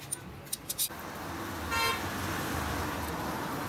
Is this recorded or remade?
recorded